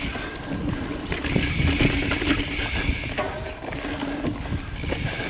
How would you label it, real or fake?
real